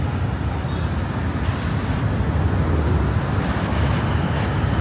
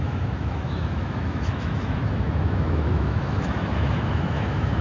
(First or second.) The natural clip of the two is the first